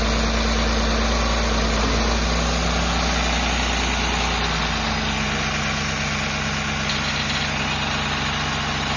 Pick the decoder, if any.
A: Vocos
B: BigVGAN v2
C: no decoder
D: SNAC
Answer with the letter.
C